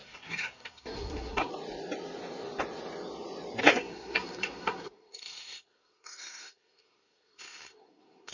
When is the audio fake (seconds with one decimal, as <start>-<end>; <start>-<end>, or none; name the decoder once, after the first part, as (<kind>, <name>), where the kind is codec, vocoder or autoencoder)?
0.0-1.5 (codec, SNAC); 3.6-8.3